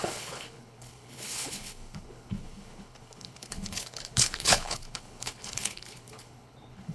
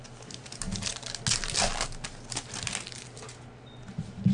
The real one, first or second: second